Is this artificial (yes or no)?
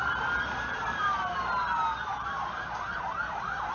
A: no